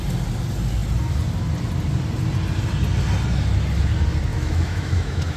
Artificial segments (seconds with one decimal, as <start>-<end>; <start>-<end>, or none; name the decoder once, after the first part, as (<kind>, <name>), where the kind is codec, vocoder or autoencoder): 4.3-5.4 (autoencoder, DAC-VAE)

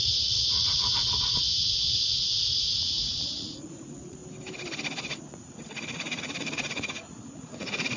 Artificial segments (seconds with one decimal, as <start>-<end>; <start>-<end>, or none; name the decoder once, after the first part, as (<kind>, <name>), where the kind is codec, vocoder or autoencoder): 0.0-4.2 (vocoder, Vocos); 5.2-8.0

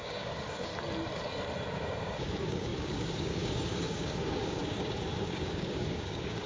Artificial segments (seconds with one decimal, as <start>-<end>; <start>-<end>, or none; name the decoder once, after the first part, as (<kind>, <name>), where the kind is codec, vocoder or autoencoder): 0.0-0.7 (codec, DAC); 1.7-6.5

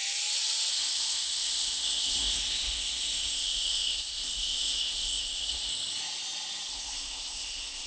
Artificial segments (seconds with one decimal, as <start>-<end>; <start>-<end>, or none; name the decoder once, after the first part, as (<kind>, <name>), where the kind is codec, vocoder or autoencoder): 0.7-5.7 (codec, ZipCodec); 6.7-7.9

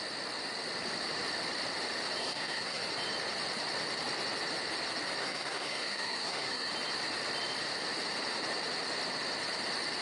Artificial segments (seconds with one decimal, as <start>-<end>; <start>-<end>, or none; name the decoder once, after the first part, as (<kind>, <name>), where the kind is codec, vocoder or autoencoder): 2.2-2.8 (codec, SNAC); 5.2-6.7

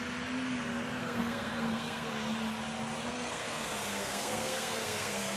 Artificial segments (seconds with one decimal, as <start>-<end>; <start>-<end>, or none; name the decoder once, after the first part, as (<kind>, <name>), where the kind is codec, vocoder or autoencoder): 1.0-2.1 (codec, SNAC); 3.1-5.4